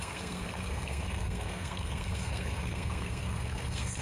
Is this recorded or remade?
remade